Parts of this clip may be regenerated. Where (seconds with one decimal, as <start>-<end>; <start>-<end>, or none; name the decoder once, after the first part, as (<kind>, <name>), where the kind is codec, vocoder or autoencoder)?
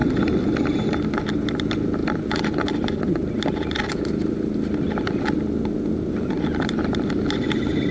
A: none